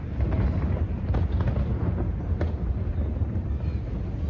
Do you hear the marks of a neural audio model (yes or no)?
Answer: no